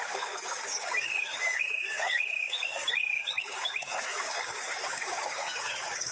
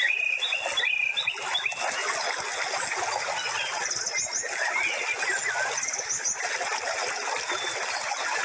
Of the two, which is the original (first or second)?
second